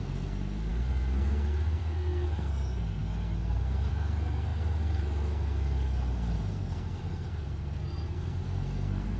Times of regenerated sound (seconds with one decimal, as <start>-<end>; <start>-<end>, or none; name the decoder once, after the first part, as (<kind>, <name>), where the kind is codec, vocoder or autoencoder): 0.0-9.2 (codec, SNAC)